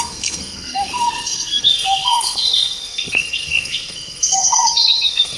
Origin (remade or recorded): remade